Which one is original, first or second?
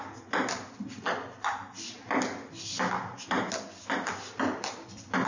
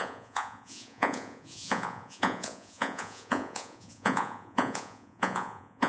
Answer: first